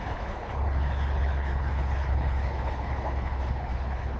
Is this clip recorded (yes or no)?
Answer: no